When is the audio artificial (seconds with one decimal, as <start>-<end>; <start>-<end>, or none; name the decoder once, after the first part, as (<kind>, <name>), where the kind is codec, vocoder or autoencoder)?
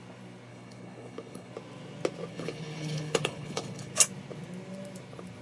0.5-1.5 (codec, HILCodec); 2.3-3.9